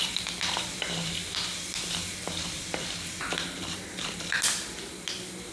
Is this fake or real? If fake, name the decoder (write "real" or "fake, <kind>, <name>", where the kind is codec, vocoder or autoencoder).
fake, vocoder, BigVGAN v2